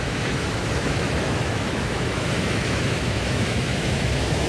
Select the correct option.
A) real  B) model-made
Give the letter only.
B